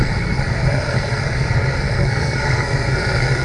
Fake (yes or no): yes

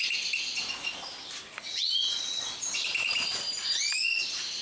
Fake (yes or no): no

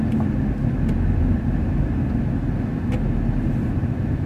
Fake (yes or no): no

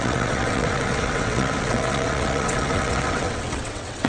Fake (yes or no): yes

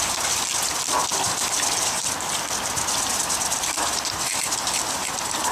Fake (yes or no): no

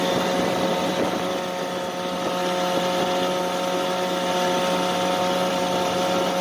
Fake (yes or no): no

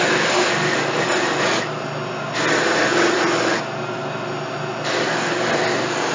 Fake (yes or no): no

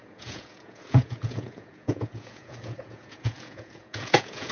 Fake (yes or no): yes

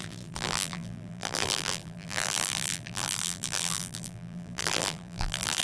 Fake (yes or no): yes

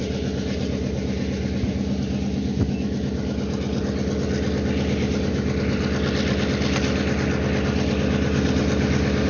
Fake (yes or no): no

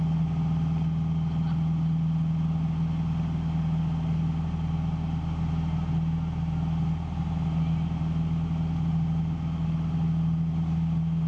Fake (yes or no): no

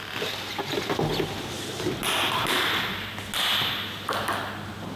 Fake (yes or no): no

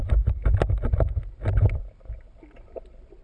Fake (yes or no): no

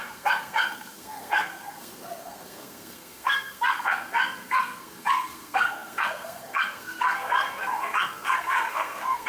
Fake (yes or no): yes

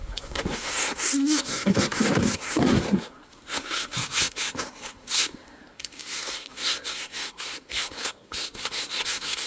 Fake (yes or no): yes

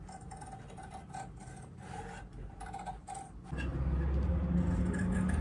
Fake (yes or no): no